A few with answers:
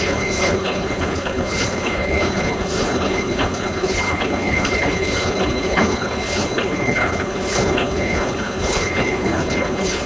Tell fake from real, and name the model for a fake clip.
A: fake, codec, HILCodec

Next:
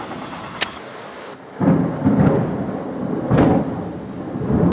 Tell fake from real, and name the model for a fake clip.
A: real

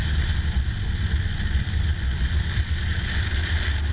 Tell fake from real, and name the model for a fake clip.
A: real